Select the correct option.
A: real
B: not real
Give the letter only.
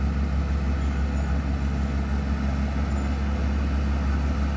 A